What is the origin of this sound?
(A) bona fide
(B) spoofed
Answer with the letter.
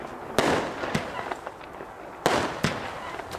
A